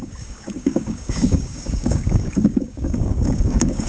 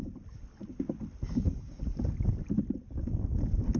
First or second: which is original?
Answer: second